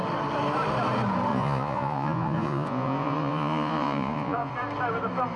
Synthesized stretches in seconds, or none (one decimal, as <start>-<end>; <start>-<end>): 1.3-4.5